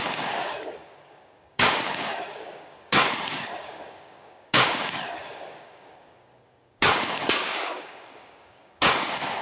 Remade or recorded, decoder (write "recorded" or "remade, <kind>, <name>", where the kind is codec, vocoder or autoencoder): remade, codec, DAC